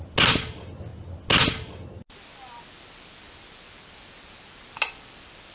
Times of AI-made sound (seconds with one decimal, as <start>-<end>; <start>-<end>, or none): none